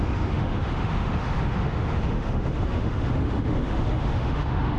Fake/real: fake